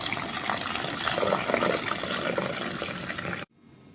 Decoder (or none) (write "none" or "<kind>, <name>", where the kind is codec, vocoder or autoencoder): none